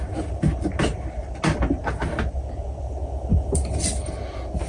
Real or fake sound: real